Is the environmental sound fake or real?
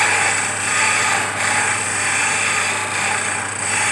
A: real